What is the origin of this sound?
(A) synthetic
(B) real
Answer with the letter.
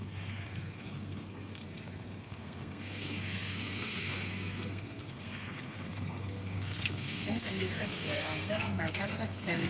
A